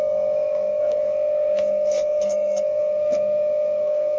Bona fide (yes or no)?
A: no